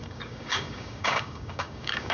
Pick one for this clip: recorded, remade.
remade